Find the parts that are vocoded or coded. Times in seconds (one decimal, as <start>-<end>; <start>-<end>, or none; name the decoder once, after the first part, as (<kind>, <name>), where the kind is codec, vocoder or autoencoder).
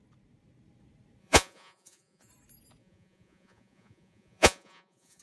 1.2-2.3 (vocoder, Vocos); 2.8-5.2